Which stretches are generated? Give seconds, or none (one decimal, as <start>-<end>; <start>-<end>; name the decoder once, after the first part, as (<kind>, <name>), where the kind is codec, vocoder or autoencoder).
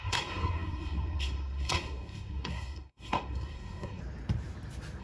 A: 0.0-4.0 (codec, SNAC)